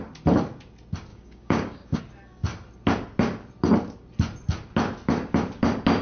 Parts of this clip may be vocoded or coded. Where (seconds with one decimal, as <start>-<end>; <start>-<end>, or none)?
1.1-2.0